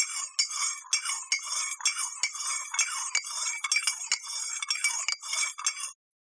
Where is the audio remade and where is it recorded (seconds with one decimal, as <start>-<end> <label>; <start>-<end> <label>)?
0.0-6.3 recorded